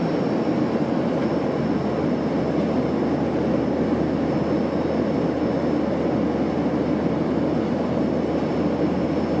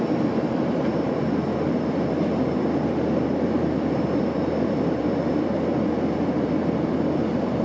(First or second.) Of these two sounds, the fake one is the second